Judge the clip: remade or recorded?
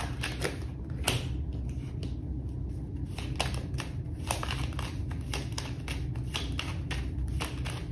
recorded